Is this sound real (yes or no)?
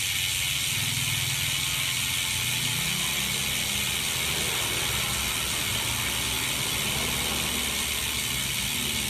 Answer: yes